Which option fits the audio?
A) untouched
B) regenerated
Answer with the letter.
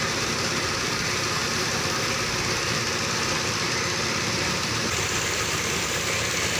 B